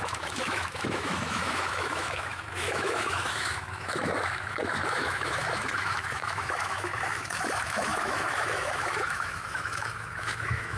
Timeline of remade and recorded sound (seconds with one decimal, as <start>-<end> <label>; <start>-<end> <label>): 0.0-10.8 remade